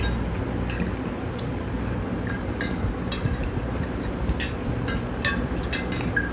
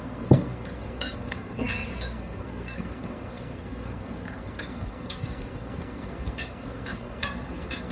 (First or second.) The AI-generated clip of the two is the second